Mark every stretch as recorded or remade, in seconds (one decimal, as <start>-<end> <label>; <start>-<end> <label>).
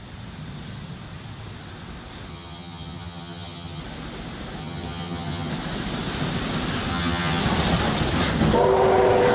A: 0.0-2.3 recorded; 2.3-3.8 remade; 3.8-4.6 recorded; 4.6-5.5 remade; 5.5-6.9 recorded; 6.9-7.4 remade; 7.4-9.3 recorded